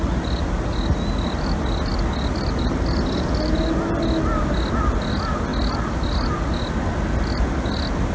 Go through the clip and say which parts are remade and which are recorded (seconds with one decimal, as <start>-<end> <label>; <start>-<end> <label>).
0.0-8.1 recorded